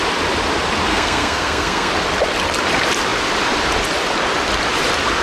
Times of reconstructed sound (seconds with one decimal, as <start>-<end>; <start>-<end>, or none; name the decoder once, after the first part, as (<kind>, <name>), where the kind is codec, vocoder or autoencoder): 0.9-1.9 (codec, SNAC)